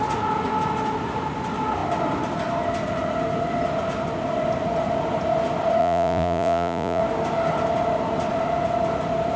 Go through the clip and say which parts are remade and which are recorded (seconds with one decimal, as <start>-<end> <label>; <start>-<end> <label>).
0.0-5.8 recorded; 5.8-7.0 remade; 7.0-9.4 recorded